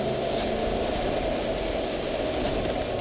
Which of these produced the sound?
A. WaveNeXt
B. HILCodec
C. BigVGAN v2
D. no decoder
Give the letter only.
D